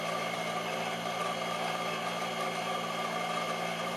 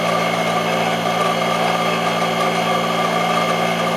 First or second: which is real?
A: second